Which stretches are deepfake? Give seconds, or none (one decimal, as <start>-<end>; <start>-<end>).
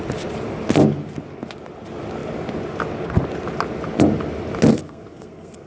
4.7-5.7